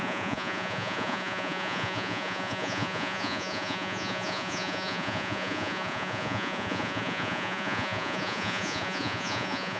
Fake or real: fake